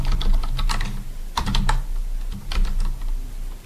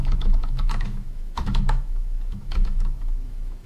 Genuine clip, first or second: first